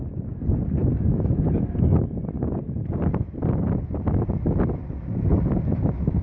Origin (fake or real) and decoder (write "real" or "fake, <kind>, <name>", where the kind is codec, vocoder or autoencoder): real